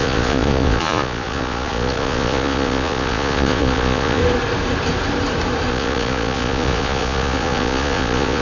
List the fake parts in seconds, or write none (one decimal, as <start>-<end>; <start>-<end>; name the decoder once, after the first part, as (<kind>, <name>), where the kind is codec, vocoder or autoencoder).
0.0-4.2 (vocoder, Vocos); 5.7-8.4